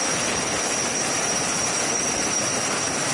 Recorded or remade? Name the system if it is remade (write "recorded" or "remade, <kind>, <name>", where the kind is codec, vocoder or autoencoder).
recorded